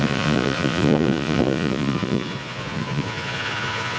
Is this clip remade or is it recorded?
remade